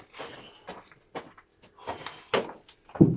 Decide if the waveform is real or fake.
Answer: real